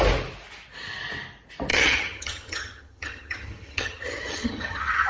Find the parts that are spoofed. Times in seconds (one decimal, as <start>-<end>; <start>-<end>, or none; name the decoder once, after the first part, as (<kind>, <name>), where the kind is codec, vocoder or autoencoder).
1.7-5.1 (vocoder, HiFi-GAN)